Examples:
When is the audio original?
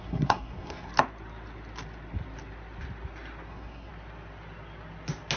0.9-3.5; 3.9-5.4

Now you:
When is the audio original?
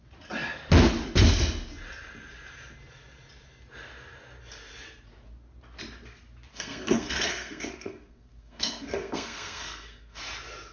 0.0-6.5; 10.2-10.7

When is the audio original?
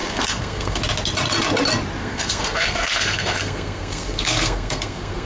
0.8-2.0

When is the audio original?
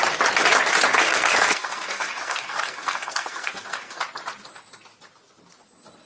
0.0-1.0; 4.0-6.1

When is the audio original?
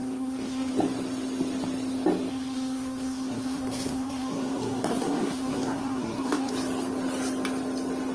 0.7-2.3; 6.5-8.1